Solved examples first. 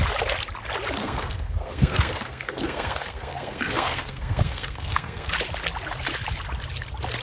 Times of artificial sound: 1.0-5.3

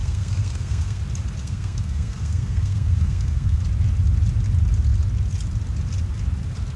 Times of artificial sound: 0.0-1.0; 1.4-3.6